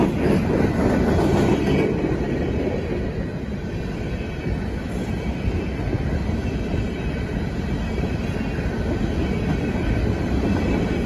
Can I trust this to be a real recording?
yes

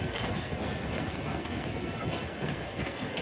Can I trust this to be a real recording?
no